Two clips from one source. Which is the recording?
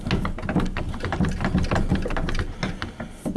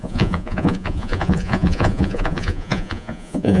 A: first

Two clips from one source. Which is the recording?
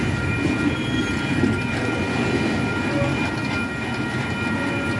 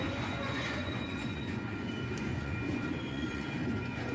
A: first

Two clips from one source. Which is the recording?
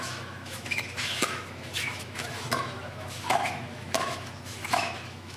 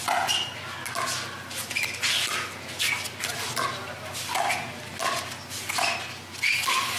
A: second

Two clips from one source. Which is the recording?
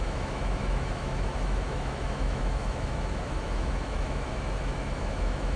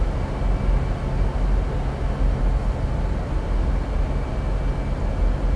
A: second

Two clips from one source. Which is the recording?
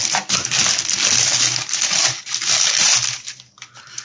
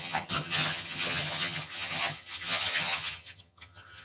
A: first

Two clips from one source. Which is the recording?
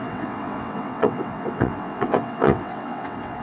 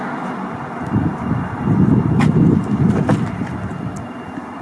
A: second